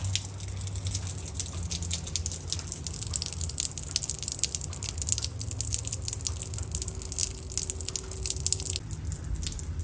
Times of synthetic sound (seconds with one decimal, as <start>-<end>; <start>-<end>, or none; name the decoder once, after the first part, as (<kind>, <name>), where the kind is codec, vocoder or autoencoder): none